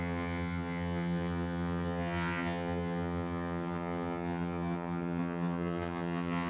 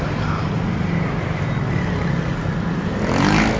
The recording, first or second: second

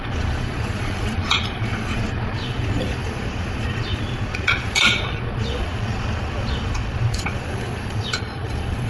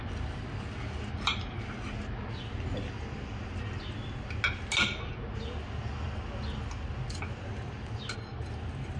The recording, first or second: second